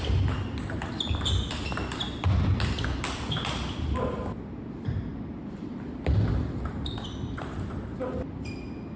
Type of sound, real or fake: real